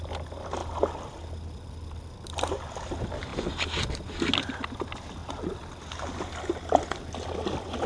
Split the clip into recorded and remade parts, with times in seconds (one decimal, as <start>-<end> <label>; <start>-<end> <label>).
0.0-7.9 recorded